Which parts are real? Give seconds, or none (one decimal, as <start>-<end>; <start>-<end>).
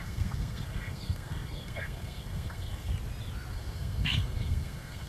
2.9-3.5